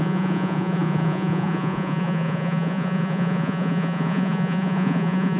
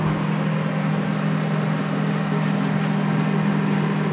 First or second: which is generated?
first